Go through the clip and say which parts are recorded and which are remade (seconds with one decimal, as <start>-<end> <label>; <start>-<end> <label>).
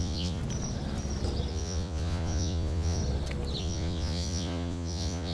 0.0-0.4 remade; 0.4-1.5 recorded; 1.5-3.0 remade; 3.0-3.6 recorded; 3.6-5.3 remade